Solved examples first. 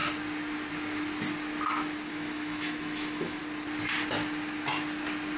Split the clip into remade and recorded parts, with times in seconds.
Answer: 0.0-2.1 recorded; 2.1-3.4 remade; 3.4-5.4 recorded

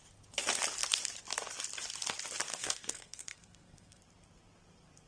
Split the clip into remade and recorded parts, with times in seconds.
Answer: 0.0-2.5 recorded; 2.5-4.0 remade; 4.0-5.1 recorded